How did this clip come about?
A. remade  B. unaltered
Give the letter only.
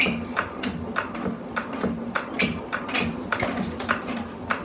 B